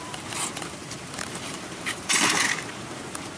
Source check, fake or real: fake